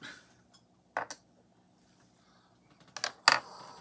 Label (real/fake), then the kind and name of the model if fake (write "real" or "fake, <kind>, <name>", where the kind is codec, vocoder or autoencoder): real